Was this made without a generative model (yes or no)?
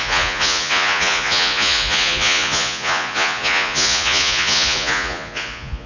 no